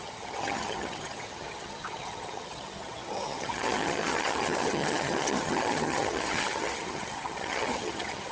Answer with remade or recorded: remade